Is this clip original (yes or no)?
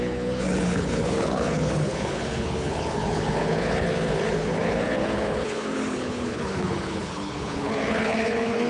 no